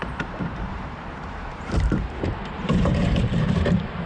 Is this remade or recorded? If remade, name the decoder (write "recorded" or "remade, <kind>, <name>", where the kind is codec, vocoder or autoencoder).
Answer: remade, vocoder, BigVGAN v2